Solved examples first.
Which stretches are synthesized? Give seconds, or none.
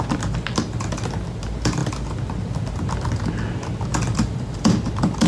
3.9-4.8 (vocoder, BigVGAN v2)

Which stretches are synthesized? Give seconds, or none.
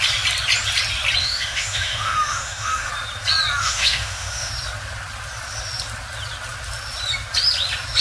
1.2-2.9 (autoencoder, DAC-VAE); 3.6-4.5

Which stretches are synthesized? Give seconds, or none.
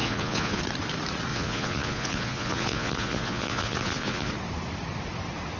0.0-0.6 (vocoder, Vocos); 1.3-4.3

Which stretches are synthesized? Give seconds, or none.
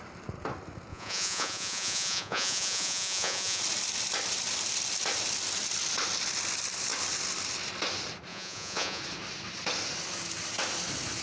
0.9-3.6 (vocoder, Vocos); 8.3-9.0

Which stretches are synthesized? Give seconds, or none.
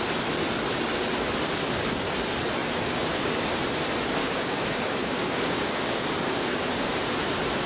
4.2-6.9 (codec, DAC)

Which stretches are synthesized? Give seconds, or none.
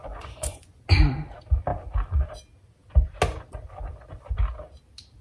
0.0-0.8 (vocoder, Vocos)